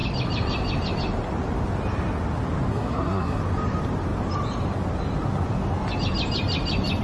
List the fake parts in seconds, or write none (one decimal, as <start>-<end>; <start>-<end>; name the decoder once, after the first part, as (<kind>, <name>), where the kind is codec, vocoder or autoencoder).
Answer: 2.7-3.4 (codec, SNAC)